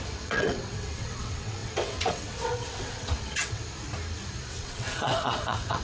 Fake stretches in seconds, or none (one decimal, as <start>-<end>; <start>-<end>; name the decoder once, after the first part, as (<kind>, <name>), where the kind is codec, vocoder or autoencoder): 0.0-3.6 (vocoder, WaveNeXt); 4.5-5.8